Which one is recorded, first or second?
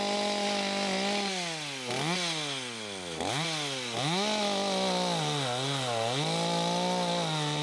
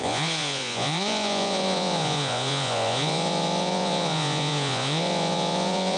first